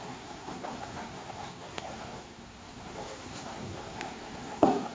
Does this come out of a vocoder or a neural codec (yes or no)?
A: yes